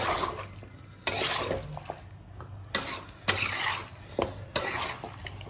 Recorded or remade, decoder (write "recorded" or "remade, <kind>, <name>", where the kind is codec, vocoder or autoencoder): recorded